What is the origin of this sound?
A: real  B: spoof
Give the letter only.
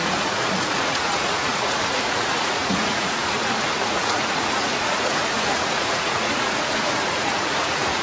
B